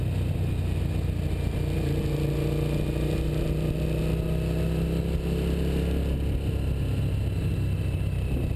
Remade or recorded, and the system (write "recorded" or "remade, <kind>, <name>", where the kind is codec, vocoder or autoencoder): recorded